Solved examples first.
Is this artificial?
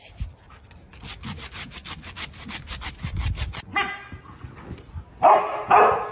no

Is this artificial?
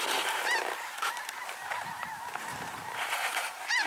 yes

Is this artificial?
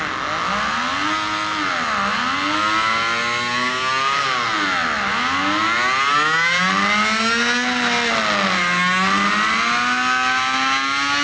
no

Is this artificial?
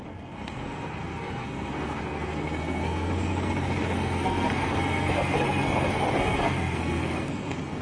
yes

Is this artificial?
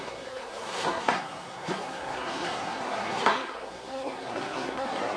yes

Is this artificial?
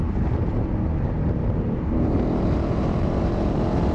yes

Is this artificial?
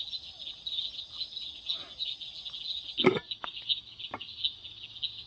no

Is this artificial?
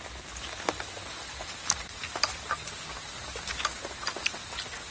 no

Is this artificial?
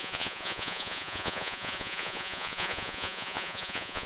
yes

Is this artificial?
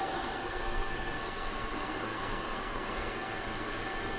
yes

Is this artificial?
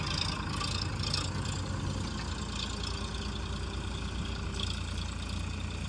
no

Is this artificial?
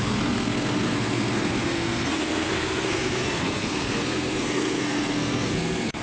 yes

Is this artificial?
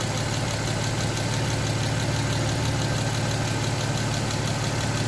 no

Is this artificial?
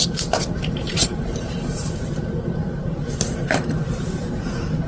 yes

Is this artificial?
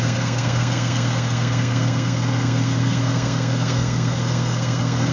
yes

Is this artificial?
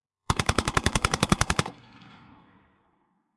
yes